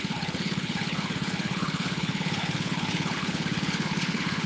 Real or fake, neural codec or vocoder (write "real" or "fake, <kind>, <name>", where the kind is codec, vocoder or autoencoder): fake, codec, HILCodec